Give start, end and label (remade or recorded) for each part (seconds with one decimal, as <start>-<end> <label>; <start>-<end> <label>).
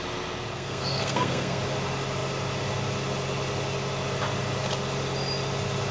0.0-0.5 recorded; 0.5-1.6 remade; 1.6-5.9 recorded